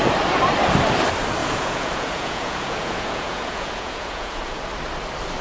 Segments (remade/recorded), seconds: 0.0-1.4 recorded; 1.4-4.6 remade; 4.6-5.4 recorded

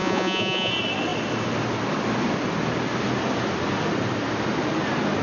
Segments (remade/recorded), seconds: 0.0-0.7 remade; 0.7-5.2 recorded

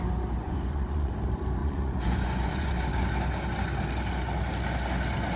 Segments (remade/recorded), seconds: 0.0-0.4 recorded; 0.4-1.1 remade; 1.1-1.6 recorded; 1.6-2.7 remade; 2.7-5.4 recorded

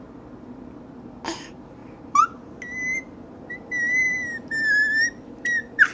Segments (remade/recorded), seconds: 0.0-5.9 recorded

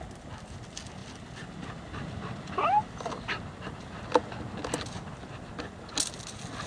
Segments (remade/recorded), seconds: 0.0-6.7 recorded